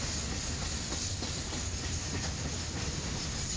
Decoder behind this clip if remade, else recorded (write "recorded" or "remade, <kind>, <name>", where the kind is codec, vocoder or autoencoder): recorded